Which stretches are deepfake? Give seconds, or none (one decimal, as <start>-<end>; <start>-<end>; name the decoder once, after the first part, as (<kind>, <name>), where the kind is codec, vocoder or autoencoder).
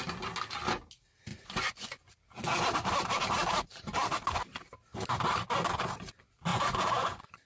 1.3-2.1 (vocoder, Vocos); 6.5-7.5